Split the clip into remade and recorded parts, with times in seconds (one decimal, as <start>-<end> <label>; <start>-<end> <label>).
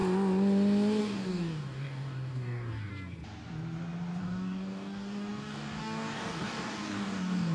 0.0-1.0 recorded; 1.0-2.9 remade; 2.9-4.2 recorded; 4.2-7.5 remade